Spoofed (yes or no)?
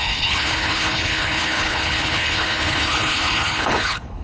yes